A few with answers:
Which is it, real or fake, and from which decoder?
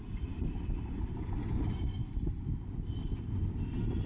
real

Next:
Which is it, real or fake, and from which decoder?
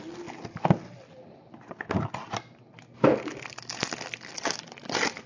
real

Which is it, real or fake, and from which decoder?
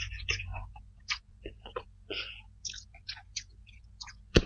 fake, vocoder, Vocos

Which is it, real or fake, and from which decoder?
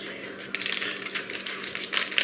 real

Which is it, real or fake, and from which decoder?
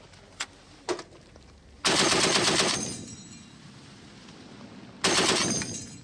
real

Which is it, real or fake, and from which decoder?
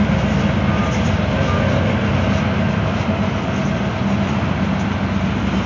real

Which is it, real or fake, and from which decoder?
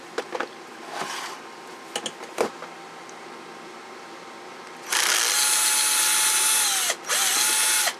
real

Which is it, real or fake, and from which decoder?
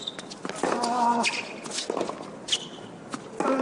real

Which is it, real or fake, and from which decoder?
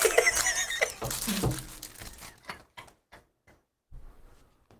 real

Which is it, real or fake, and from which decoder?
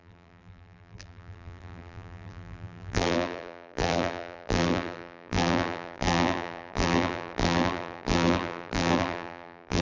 fake, vocoder, BigVGAN v2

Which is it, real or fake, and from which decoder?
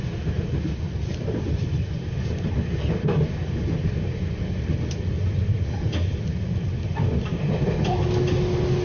real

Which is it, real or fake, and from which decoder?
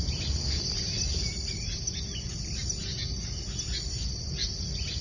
real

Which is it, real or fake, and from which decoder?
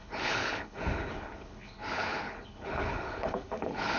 fake, codec, HILCodec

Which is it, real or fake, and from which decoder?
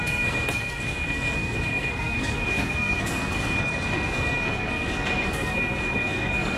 fake, codec, SNAC